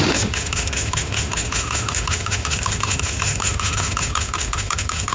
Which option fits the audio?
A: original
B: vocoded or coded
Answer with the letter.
B